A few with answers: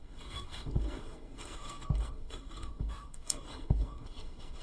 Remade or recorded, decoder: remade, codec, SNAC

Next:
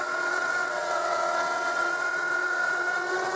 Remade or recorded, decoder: remade, vocoder, WaveNeXt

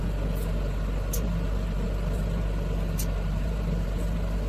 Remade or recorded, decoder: recorded